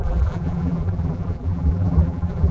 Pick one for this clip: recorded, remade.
remade